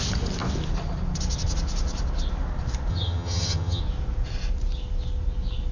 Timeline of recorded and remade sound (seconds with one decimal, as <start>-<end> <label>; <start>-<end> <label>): 0.0-2.9 recorded; 2.9-3.8 remade; 3.8-5.7 recorded